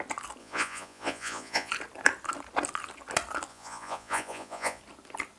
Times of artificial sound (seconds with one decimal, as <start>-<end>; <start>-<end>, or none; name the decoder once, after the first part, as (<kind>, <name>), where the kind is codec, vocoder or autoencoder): 0.4-1.7 (vocoder, Vocos); 3.5-4.8